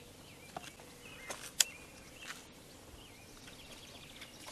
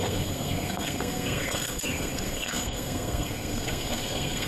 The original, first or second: first